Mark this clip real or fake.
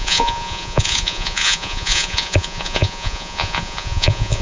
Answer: fake